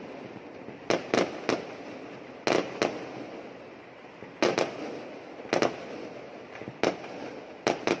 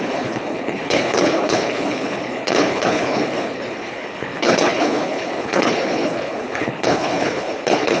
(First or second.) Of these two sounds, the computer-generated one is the second